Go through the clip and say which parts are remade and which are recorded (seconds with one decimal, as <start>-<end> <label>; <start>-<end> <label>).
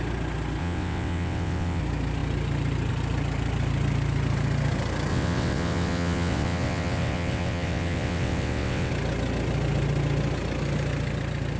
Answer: 0.0-0.6 recorded; 0.6-1.8 remade; 1.8-5.1 recorded; 5.1-8.9 remade; 8.9-11.6 recorded